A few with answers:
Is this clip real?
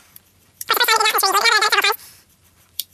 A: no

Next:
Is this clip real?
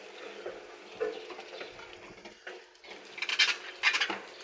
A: yes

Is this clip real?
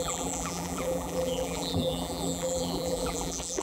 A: no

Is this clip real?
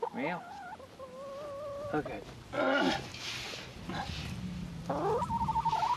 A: yes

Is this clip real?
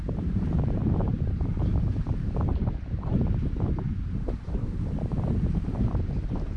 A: no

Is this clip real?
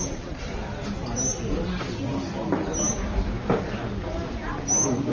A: yes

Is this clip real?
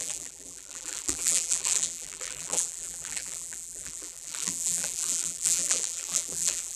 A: no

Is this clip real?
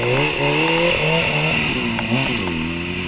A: yes